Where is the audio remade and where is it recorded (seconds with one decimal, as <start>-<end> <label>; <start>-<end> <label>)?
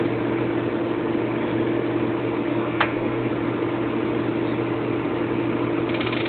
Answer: 0.0-2.5 recorded; 2.5-3.3 remade; 3.3-6.3 recorded